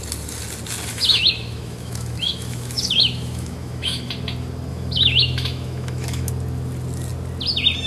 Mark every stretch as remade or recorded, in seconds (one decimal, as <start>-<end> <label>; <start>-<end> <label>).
0.0-0.9 recorded; 0.9-4.1 remade; 4.1-4.7 recorded; 4.7-6.3 remade; 6.3-7.9 recorded